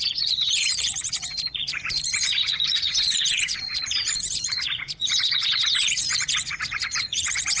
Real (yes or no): no